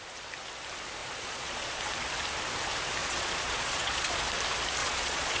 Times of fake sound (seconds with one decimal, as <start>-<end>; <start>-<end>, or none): 1.0-1.8; 3.0-4.2; 4.8-5.4